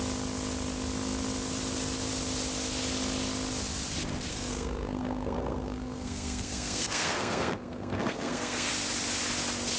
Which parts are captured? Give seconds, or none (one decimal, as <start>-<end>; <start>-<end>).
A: 0.0-4.3; 8.7-9.8